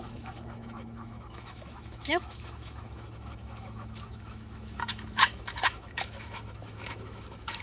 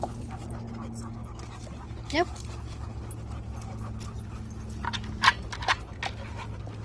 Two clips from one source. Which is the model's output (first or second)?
first